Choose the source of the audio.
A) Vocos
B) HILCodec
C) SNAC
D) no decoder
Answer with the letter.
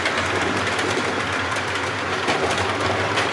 D